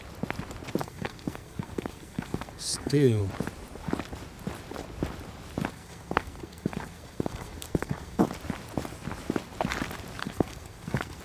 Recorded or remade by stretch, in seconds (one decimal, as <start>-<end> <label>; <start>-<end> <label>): 0.0-0.8 recorded; 0.8-3.2 remade; 3.2-5.7 recorded; 5.7-8.2 remade; 8.2-10.2 recorded; 10.2-11.2 remade